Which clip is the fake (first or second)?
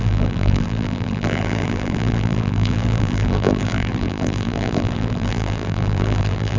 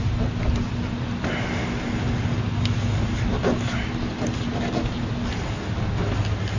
first